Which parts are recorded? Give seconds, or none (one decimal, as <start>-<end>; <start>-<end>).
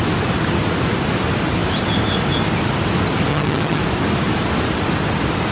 0.0-3.3; 3.8-5.5